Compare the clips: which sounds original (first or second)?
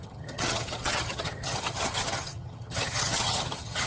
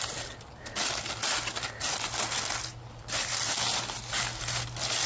second